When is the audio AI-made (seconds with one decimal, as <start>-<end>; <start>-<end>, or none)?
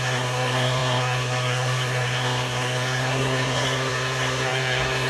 0.0-5.1